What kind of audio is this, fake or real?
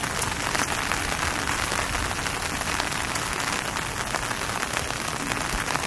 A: real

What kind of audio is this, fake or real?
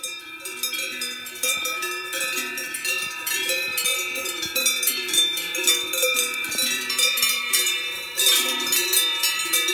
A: fake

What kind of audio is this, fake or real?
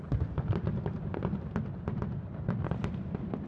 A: fake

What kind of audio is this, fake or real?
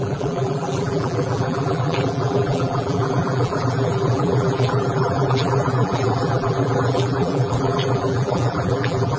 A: fake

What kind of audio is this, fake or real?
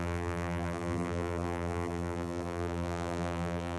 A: fake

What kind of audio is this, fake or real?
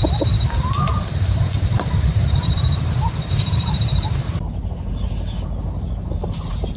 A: fake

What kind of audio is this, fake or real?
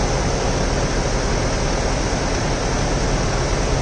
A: real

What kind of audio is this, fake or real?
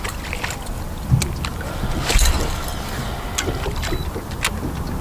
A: real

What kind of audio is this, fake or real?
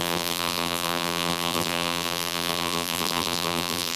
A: fake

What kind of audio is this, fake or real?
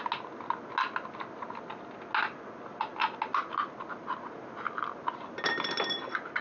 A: real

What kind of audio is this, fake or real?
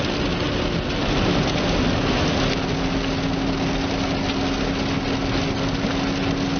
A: real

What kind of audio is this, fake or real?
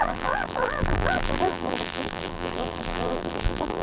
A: fake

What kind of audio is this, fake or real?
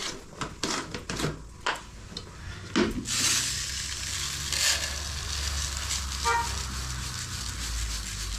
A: real